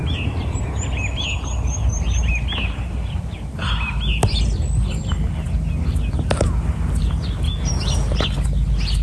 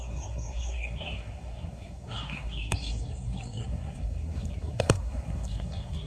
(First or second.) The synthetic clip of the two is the second